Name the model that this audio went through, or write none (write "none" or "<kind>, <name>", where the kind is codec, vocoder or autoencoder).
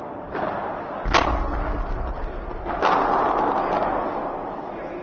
none